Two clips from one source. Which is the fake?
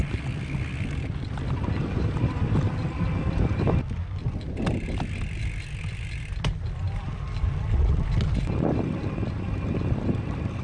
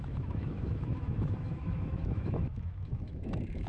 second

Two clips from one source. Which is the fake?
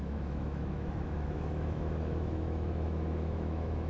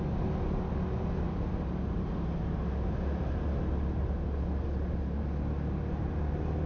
first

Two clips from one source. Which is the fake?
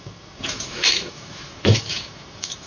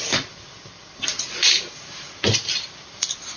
first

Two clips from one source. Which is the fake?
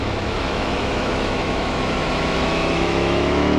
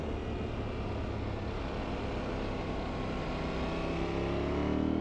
first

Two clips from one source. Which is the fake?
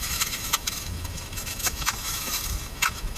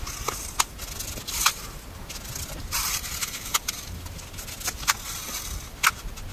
first